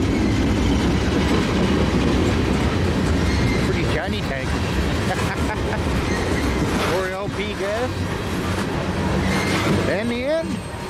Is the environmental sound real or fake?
real